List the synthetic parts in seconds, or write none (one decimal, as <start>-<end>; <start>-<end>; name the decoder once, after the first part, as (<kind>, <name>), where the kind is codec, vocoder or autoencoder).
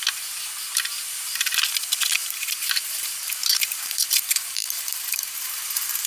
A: 2.2-6.1 (vocoder, BigVGAN v2)